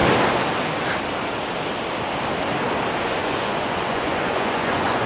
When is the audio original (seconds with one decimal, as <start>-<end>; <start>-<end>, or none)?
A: 0.0-3.0